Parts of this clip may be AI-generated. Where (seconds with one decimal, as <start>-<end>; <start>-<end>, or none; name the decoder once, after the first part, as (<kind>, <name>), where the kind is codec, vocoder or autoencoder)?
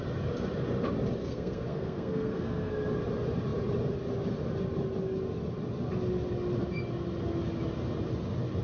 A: 1.2-2.7 (codec, SNAC)